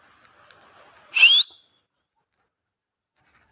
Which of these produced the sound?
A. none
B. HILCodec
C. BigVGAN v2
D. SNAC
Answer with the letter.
A